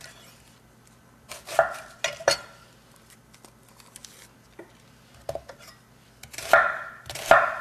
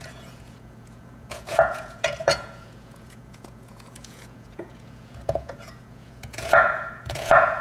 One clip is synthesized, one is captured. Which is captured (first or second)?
first